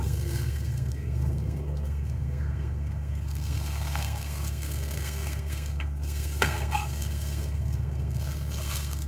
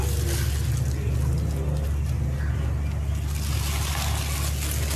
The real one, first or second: second